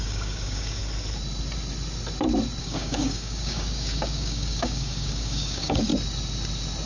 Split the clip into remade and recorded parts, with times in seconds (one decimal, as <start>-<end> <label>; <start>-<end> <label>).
0.0-0.8 remade; 0.8-2.6 recorded; 2.6-5.9 remade; 5.9-6.9 recorded